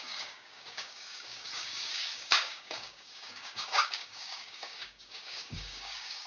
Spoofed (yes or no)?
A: yes